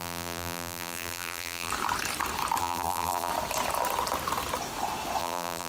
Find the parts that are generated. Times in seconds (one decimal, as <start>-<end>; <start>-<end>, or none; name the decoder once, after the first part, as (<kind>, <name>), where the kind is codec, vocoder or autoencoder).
0.0-1.7 (vocoder, BigVGAN v2); 2.6-3.3; 5.2-5.7